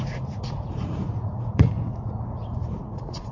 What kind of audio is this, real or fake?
fake